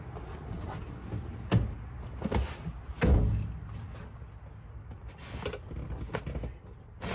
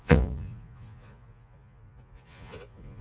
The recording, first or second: first